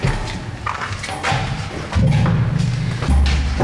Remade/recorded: recorded